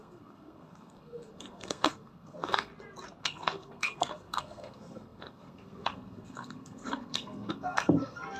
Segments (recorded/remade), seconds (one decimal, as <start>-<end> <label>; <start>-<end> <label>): 0.0-2.7 remade; 2.7-3.2 recorded; 3.2-8.4 remade

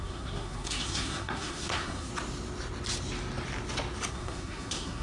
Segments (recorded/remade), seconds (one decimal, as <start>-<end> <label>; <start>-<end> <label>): 0.0-2.1 remade; 2.1-4.1 recorded; 4.1-5.0 remade

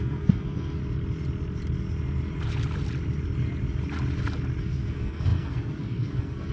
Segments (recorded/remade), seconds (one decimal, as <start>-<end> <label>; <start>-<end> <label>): 0.0-0.8 remade; 0.8-4.6 recorded; 4.6-6.5 remade

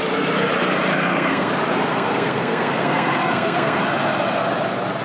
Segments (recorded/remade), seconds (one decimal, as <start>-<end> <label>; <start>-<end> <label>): 0.0-0.9 recorded; 0.9-1.5 remade; 1.5-1.9 recorded; 1.9-3.8 remade; 3.8-5.0 recorded

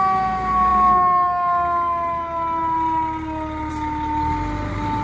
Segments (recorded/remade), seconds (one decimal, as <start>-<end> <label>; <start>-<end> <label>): 0.0-5.0 recorded

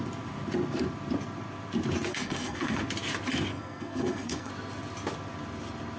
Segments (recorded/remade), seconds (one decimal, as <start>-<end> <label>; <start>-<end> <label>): 0.0-2.1 recorded; 2.1-2.8 remade; 2.8-3.5 recorded; 3.5-4.5 remade; 4.5-6.0 recorded

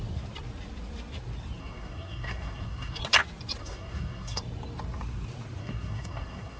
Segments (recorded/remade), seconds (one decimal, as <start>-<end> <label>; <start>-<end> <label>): 0.0-1.6 recorded; 1.6-3.0 remade; 3.0-3.6 recorded; 3.6-4.4 remade; 4.4-5.6 recorded; 5.6-6.6 remade